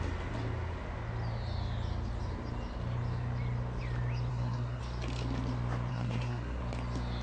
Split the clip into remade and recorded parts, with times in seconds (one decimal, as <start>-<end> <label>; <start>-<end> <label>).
0.0-4.3 recorded; 4.3-4.8 remade; 4.8-5.9 recorded; 5.9-6.6 remade; 6.6-7.2 recorded